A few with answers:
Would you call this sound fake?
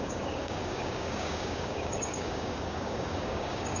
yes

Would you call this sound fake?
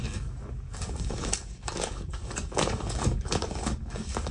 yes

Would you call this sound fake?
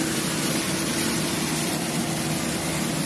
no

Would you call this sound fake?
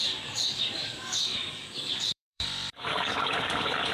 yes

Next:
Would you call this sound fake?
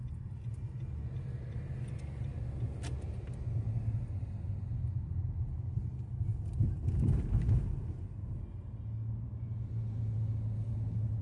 no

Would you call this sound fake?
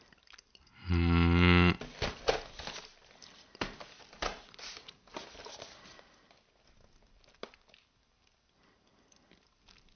no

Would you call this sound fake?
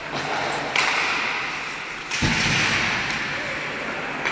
no